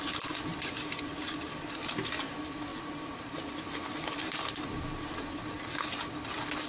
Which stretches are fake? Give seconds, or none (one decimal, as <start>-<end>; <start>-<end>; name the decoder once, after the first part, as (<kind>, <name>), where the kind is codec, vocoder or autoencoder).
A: 2.7-5.1 (vocoder, BigVGAN v2)